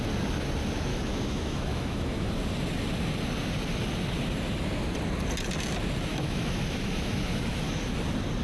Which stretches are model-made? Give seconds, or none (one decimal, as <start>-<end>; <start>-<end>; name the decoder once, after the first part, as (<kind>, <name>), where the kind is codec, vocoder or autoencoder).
0.9-2.3 (autoencoder, DAC-VAE); 6.1-7.7